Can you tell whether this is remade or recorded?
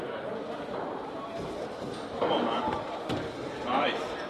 remade